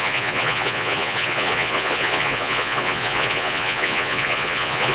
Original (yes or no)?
no